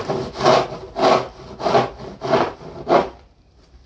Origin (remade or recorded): recorded